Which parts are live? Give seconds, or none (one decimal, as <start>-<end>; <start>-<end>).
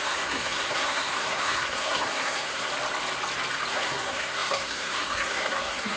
2.7-3.7